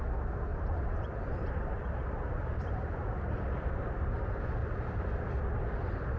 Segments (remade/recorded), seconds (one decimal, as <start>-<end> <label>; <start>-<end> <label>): 0.0-0.5 recorded; 0.5-3.7 remade; 3.7-4.6 recorded; 4.6-5.4 remade; 5.4-6.2 recorded